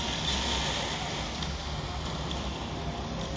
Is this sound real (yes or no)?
yes